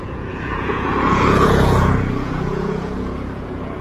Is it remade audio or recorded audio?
remade